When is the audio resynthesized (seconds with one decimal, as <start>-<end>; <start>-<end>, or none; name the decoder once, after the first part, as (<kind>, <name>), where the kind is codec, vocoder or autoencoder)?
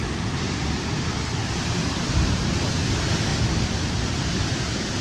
1.4-2.7 (vocoder, BigVGAN v2)